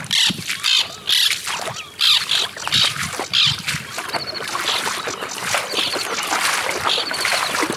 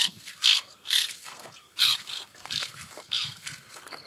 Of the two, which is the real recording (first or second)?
first